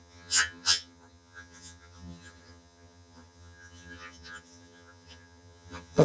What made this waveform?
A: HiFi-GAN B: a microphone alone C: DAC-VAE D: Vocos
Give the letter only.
A